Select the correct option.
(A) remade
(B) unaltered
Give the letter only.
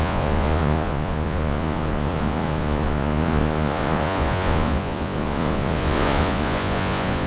A